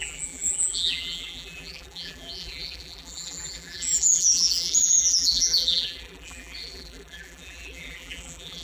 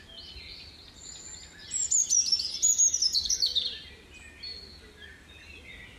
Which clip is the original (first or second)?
second